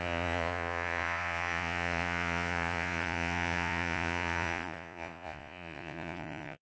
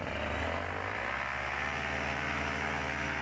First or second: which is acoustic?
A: second